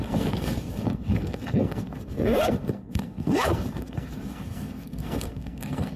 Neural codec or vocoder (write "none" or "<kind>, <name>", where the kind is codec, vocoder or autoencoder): codec, SNAC